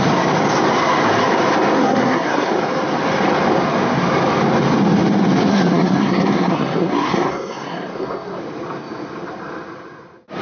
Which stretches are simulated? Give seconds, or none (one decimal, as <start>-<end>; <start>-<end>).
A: 1.8-2.5; 5.5-8.4